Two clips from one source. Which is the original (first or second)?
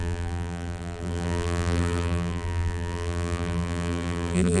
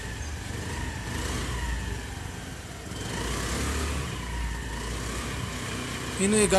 second